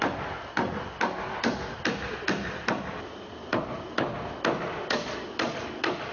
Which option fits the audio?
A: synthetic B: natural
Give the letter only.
A